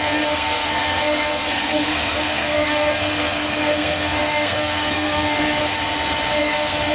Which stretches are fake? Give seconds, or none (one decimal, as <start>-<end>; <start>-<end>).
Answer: 0.0-5.6; 6.4-6.9